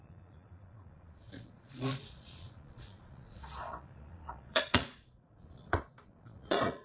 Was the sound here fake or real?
fake